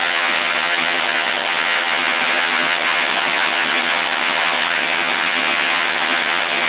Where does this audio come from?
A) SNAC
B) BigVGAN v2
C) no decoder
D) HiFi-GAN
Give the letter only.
D